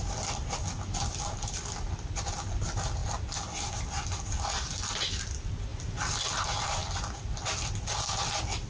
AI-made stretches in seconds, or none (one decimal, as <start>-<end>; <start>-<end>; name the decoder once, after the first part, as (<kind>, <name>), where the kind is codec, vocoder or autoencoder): none

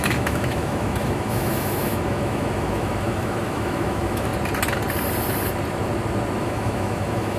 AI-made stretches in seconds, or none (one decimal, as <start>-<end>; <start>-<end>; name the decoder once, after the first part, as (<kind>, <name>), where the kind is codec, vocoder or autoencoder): 0.0-4.3 (autoencoder, DAC-VAE); 6.4-7.4

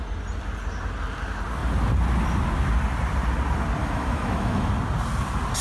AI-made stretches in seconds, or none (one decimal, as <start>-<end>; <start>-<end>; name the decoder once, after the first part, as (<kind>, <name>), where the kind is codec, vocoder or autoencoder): 3.8-4.7 (autoencoder, DAC-VAE)

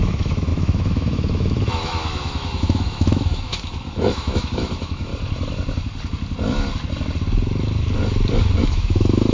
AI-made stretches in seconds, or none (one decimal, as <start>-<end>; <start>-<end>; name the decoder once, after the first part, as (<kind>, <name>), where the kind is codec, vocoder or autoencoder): 0.0-5.1 (autoencoder, DAC-VAE); 8.7-9.3

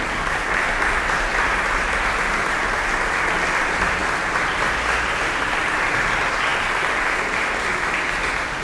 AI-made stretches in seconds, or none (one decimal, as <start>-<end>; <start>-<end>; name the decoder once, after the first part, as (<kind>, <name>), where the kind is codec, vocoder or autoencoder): none

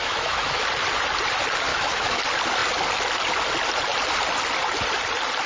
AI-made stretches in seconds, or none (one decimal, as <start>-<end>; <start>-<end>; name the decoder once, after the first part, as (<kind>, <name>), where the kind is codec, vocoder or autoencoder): 0.0-0.6 (autoencoder, DAC-VAE); 1.7-2.2